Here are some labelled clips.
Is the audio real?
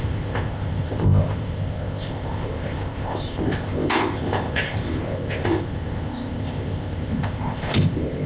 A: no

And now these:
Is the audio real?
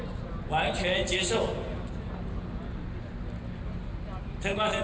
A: yes